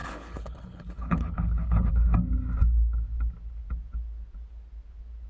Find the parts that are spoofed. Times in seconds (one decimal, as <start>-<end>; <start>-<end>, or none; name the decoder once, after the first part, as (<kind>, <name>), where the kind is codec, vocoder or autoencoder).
0.0-1.9 (codec, HILCodec)